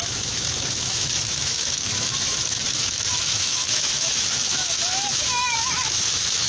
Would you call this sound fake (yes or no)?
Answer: yes